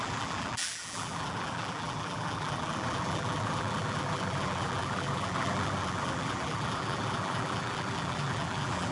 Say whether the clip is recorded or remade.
remade